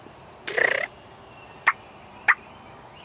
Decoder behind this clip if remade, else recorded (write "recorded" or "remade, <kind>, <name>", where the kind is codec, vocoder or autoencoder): remade, vocoder, BigVGAN v2